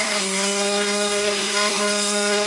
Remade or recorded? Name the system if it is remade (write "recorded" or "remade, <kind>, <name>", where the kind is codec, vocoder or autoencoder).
remade, codec, SNAC